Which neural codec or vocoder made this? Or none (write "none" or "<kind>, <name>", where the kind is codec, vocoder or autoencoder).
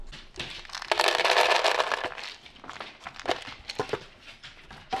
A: none